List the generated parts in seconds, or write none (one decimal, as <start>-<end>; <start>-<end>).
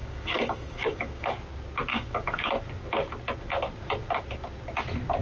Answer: 0.0-1.3; 1.9-2.5